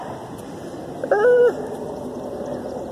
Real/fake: fake